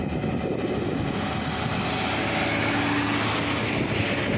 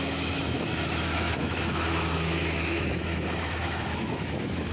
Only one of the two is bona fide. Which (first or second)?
first